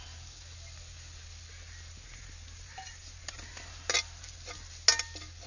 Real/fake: real